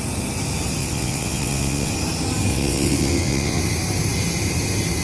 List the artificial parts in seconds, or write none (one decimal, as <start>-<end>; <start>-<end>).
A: 0.8-1.9; 2.5-3.6